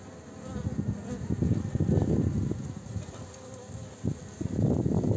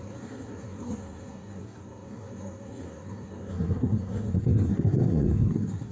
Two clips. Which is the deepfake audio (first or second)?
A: second